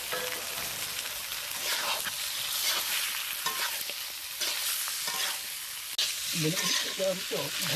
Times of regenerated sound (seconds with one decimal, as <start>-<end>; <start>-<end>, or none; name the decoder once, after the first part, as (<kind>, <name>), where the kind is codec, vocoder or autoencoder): none